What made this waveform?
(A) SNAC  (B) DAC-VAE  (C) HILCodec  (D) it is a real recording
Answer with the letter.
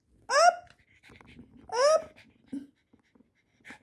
D